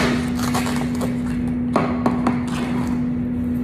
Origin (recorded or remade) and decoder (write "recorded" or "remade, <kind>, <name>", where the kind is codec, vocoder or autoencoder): recorded